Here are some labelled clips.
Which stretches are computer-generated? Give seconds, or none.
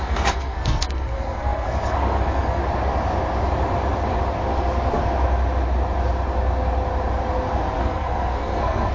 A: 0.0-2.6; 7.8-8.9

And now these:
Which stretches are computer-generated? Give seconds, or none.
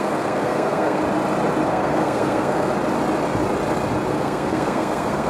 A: 0.0-1.0; 1.7-2.7; 4.1-5.3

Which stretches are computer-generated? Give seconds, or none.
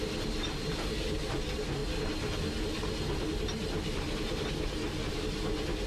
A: none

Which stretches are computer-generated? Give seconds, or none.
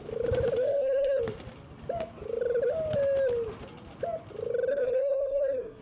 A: 0.6-1.2; 4.7-5.8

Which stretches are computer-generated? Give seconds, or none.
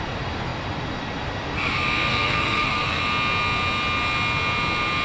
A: 2.1-3.0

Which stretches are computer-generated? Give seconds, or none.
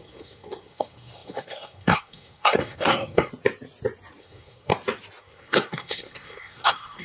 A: 0.0-3.3; 4.2-4.7; 5.2-7.0